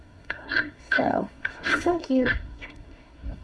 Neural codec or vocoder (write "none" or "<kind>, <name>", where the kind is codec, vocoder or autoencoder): codec, SNAC